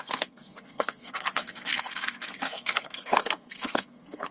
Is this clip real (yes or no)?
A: no